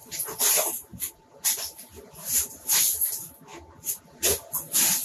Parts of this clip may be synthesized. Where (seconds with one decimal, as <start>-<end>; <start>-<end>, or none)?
none